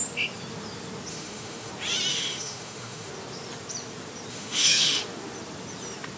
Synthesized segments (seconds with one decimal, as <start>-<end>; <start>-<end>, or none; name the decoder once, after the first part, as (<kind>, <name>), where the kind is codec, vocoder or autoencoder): 1.1-1.7 (autoencoder, DAC-VAE); 2.1-3.1; 4.3-5.0